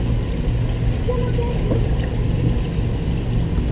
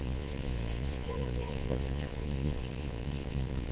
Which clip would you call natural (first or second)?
first